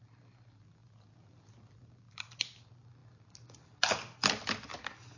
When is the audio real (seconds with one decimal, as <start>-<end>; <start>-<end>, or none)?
0.0-5.2